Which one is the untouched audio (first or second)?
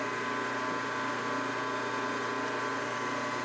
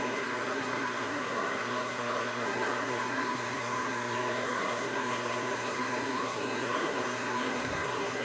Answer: first